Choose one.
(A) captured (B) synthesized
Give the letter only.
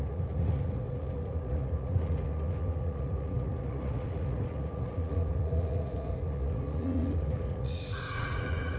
B